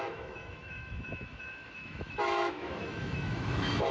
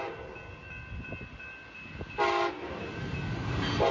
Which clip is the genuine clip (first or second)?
second